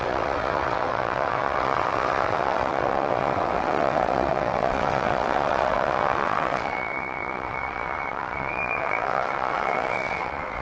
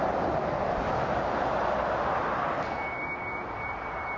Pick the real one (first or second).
second